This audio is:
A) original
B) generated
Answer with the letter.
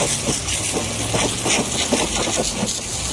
A